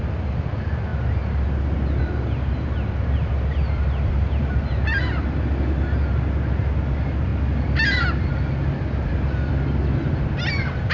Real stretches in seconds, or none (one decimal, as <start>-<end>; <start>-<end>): 0.0-3.2; 4.4-10.9